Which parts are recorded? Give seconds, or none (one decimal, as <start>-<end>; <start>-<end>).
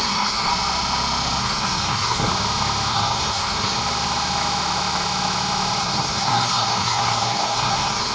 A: 0.5-1.4; 2.3-2.9; 3.8-5.8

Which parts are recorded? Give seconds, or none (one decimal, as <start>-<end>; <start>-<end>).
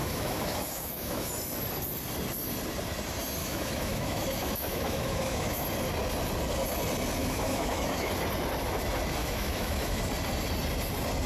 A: 1.3-3.4; 5.6-7.2; 8.1-9.2; 10.0-11.3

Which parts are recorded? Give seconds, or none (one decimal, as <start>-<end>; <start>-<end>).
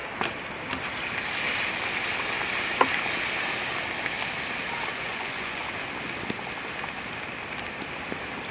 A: 0.0-4.9; 5.6-8.5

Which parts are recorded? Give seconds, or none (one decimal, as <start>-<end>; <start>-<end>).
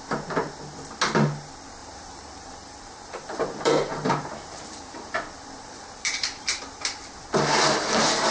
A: 0.0-1.8; 6.6-8.3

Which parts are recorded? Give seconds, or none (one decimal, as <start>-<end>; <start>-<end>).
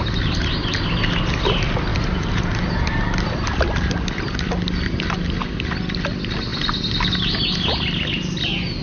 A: 0.0-1.9; 3.9-8.8